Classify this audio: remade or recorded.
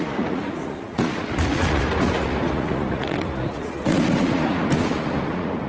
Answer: remade